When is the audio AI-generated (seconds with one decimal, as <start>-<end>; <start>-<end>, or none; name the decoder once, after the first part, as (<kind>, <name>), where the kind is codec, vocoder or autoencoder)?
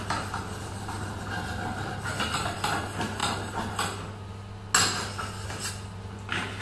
none